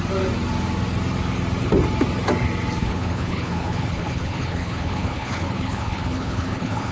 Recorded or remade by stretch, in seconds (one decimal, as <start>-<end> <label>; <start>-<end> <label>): 0.0-2.8 recorded; 2.8-6.9 remade